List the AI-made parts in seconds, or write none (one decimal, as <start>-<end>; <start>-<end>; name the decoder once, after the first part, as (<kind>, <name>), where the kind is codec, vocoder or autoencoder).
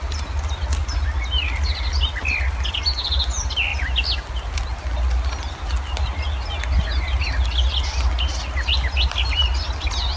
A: none